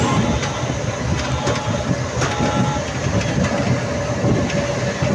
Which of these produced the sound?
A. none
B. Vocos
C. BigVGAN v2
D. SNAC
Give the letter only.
A